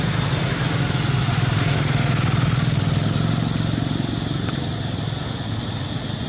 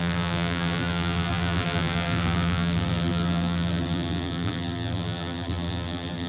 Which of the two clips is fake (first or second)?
second